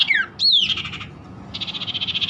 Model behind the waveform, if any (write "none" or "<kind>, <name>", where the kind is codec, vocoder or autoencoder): none